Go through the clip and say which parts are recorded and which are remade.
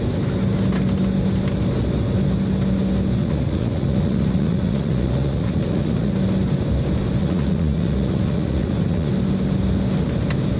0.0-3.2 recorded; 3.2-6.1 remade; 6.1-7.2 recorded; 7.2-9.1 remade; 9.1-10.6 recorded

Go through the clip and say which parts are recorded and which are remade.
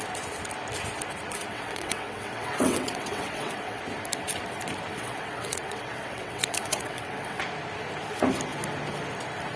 0.0-1.5 recorded; 1.5-3.8 remade; 3.8-4.9 recorded; 4.9-7.4 remade; 7.4-9.6 recorded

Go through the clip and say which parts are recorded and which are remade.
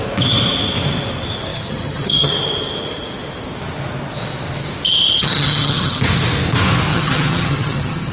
0.0-1.5 recorded; 1.5-2.3 remade; 2.3-5.2 recorded; 5.2-6.0 remade; 6.0-6.9 recorded; 6.9-8.1 remade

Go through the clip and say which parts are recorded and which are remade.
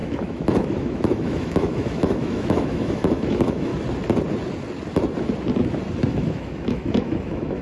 0.0-3.7 remade; 3.7-6.1 recorded; 6.1-7.6 remade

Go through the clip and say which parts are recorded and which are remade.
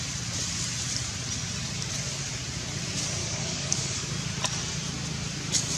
0.0-3.2 recorded; 3.2-4.1 remade; 4.1-5.8 recorded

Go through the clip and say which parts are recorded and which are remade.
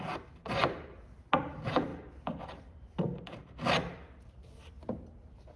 0.0-5.6 recorded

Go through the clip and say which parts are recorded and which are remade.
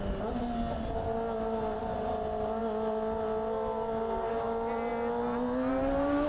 0.0-6.3 recorded